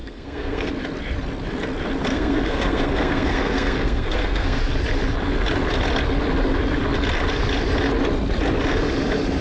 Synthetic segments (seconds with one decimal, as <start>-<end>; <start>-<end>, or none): 0.0-0.7; 2.1-4.6